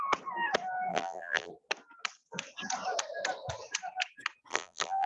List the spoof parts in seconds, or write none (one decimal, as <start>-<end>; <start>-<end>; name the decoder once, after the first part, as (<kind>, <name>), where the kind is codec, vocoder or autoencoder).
0.9-1.5 (vocoder, BigVGAN v2); 4.5-5.1